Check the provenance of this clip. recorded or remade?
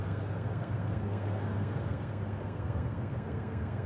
remade